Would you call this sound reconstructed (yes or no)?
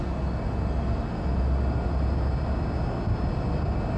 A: no